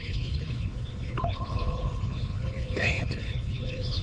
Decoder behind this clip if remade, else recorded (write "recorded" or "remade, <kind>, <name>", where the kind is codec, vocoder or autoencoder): remade, codec, HILCodec